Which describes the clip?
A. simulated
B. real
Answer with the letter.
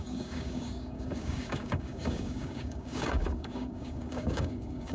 A